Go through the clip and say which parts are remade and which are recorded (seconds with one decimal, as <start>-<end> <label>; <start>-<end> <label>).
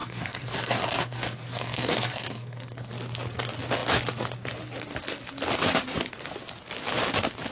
0.0-2.9 remade; 2.9-7.5 recorded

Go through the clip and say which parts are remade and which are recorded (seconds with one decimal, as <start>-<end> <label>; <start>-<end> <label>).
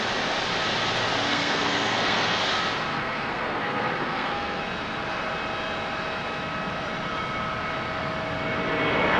0.0-1.3 recorded; 1.3-2.4 remade; 2.4-2.9 recorded; 2.9-4.6 remade; 4.6-9.2 recorded